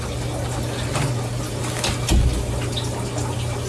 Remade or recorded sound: recorded